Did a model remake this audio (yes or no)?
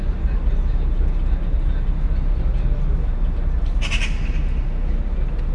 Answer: no